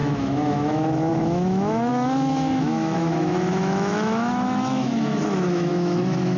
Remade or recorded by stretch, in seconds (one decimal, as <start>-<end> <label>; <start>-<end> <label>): 0.0-6.4 remade